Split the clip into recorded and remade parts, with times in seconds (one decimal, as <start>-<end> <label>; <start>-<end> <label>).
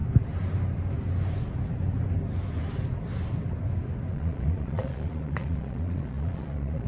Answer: 0.0-4.1 recorded; 4.1-6.9 remade